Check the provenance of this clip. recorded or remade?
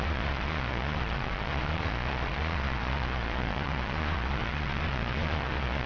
remade